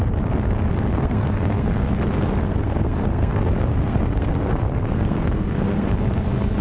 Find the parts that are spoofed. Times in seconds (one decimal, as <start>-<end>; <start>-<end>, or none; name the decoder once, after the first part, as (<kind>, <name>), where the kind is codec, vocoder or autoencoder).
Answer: 0.9-1.9 (codec, SNAC); 2.4-5.9